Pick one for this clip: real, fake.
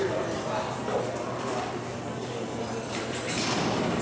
fake